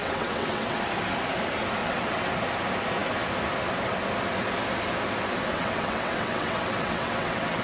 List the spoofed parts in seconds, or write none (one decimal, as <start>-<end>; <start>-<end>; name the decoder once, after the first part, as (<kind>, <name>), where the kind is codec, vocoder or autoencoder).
0.0-0.8 (vocoder, WaveNeXt); 1.8-2.3; 5.5-7.6